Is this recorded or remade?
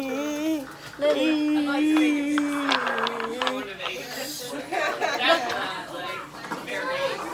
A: recorded